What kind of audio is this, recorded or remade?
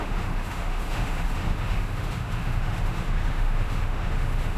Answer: remade